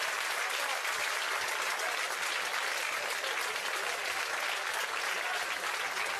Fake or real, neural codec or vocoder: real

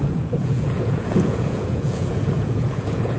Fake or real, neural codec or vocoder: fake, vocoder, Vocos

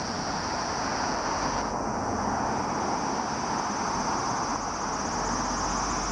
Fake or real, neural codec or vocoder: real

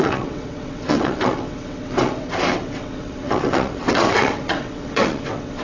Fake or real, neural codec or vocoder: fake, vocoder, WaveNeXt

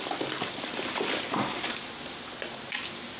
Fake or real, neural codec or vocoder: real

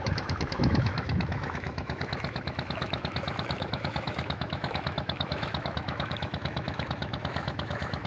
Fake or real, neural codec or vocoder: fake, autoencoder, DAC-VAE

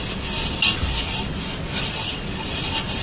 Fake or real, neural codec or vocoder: real